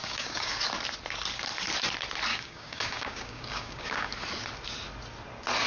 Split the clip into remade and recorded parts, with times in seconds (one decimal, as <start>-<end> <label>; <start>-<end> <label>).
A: 0.0-0.6 remade; 0.6-2.3 recorded; 2.3-4.1 remade; 4.1-5.7 recorded